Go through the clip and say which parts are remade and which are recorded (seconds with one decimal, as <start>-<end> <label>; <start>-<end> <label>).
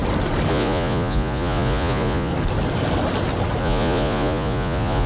0.0-0.5 recorded; 0.5-2.3 remade; 2.3-3.6 recorded; 3.6-5.1 remade